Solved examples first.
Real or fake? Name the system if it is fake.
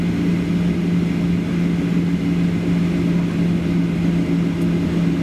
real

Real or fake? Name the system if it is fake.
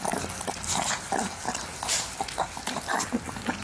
real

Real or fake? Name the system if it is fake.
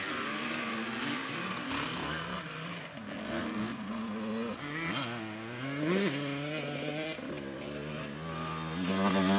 real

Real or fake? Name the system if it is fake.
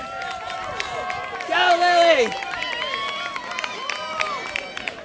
real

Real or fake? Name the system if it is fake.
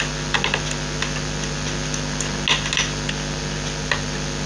real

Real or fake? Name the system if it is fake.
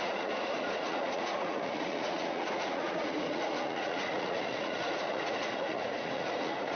fake, vocoder, Vocos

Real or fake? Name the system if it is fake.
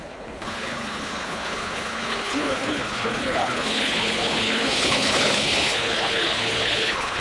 fake, codec, HILCodec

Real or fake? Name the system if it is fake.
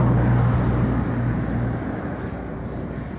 real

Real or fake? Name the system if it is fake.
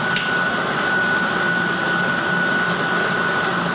real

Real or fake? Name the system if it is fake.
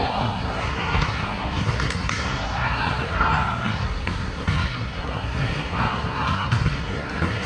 fake, codec, SNAC